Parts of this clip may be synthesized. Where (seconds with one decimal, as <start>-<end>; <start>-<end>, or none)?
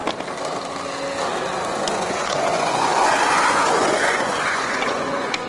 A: 1.7-5.5